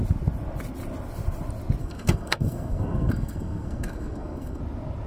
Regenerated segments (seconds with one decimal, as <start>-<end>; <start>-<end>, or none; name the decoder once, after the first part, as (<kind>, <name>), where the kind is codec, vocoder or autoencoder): 1.8-4.6 (codec, SNAC)